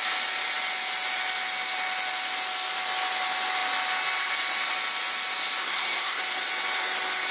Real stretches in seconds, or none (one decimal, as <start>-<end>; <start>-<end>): 0.0-5.6; 6.2-7.3